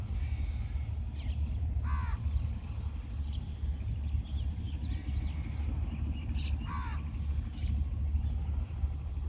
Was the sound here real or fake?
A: real